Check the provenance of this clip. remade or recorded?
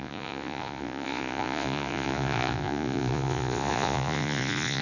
remade